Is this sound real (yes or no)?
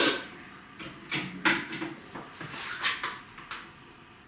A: yes